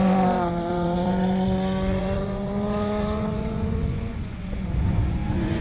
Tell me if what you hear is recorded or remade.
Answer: remade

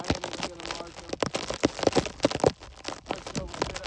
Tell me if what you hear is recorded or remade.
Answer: recorded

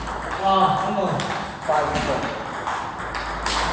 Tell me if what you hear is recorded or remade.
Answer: recorded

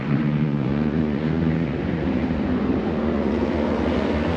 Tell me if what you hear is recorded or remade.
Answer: remade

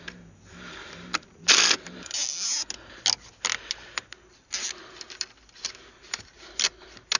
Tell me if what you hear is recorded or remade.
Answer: recorded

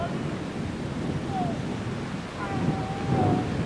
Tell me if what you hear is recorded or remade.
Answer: recorded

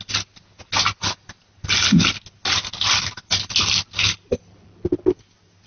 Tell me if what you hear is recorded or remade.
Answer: recorded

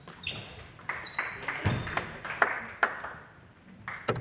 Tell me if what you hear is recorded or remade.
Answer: recorded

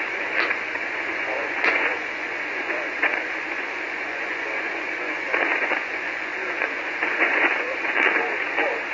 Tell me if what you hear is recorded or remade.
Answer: remade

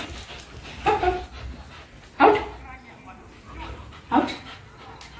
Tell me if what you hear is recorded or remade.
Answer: recorded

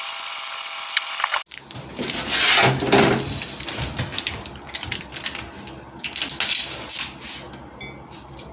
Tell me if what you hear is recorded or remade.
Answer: recorded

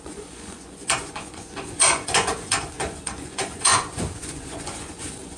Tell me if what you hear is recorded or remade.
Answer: remade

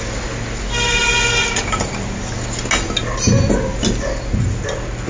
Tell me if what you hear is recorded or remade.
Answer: recorded